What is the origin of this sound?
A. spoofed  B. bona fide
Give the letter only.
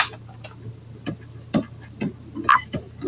A